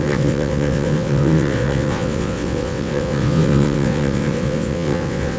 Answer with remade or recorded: remade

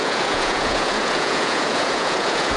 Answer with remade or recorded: remade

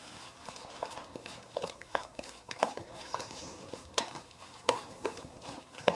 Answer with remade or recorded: remade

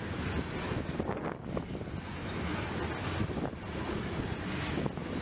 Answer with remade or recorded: recorded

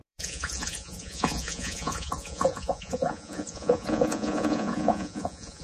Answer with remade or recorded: remade